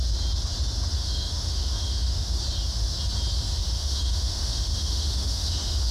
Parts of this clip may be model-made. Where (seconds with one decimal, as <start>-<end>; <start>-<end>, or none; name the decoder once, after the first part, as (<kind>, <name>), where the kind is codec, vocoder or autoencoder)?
1.0-2.4 (autoencoder, DAC-VAE); 3.6-5.9